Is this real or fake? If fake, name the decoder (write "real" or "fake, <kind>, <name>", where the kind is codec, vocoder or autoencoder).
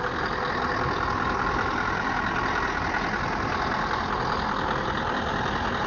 real